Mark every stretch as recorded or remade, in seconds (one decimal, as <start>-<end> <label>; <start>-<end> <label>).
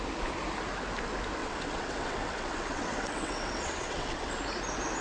0.0-1.4 recorded; 1.4-4.4 remade; 4.4-5.0 recorded